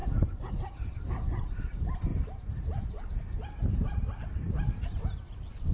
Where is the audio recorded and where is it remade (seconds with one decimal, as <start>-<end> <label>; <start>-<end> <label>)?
0.0-5.7 recorded